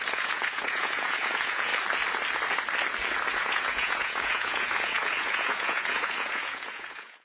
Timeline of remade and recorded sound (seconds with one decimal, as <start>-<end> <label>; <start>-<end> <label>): 0.0-1.7 remade; 1.7-3.3 recorded; 3.3-7.2 remade

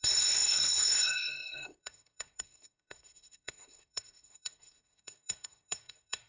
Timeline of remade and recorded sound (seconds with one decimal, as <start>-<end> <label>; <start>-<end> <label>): 0.0-6.3 remade